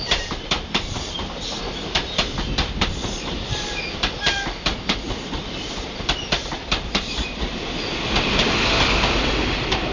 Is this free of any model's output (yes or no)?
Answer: no